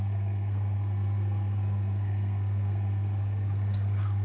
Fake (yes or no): yes